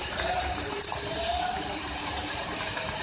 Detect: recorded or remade remade